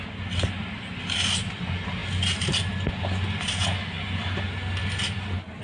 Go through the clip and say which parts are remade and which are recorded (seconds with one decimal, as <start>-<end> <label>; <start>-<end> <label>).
0.0-5.6 recorded